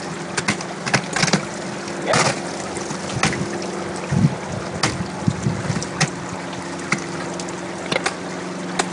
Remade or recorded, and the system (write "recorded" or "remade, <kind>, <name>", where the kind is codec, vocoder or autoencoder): recorded